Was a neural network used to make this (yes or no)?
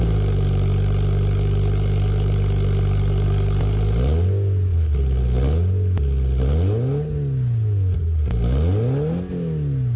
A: no